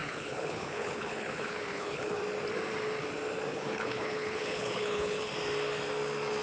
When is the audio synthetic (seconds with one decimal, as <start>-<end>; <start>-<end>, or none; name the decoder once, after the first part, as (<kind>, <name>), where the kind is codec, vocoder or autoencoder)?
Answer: 0.0-2.2 (codec, HILCodec); 3.5-5.3

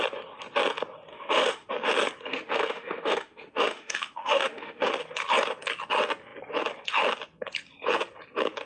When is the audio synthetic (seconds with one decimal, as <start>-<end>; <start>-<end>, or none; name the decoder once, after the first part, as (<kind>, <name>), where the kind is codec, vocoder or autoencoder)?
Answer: 1.1-1.7 (autoencoder, DAC-VAE); 2.3-4.9

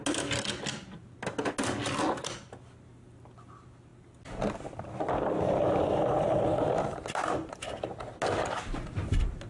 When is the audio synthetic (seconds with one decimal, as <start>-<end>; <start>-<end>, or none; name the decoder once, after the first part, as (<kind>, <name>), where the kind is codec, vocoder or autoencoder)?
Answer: none

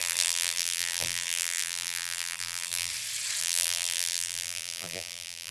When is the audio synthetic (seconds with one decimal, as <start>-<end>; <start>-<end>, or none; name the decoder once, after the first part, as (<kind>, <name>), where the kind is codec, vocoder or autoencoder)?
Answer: 0.0-2.9 (vocoder, BigVGAN v2); 3.4-5.5

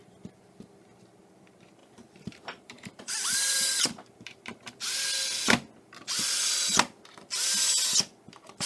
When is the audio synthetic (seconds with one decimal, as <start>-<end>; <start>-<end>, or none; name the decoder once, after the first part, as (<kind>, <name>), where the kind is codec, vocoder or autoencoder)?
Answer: 1.8-4.8 (vocoder, BigVGAN v2)

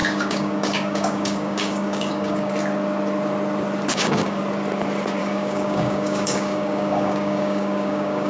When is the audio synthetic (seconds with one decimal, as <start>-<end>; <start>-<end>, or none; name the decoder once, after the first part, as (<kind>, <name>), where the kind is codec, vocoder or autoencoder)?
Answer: 0.0-2.5 (codec, DAC); 3.9-4.4; 5.2-8.3